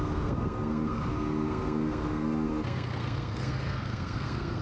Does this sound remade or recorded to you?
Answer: remade